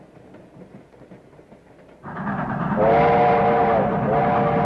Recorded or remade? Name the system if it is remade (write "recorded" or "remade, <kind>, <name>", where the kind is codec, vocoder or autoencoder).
recorded